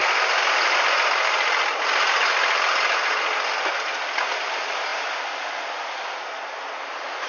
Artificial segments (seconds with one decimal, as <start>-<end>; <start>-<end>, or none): none